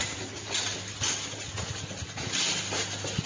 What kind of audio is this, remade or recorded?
recorded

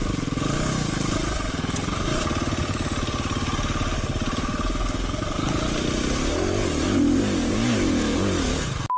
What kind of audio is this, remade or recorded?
recorded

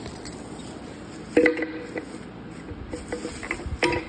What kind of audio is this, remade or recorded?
recorded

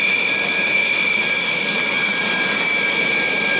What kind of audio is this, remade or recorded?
recorded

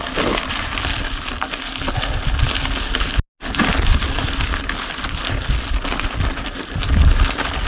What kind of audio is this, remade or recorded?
recorded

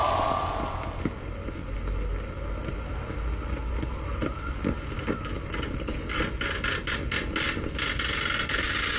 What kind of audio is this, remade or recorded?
recorded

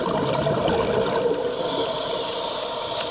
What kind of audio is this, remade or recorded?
remade